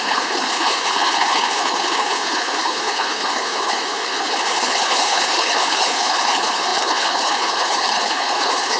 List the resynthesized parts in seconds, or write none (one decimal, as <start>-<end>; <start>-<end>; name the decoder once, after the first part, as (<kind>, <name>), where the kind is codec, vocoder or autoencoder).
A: 0.0-8.8 (codec, HILCodec)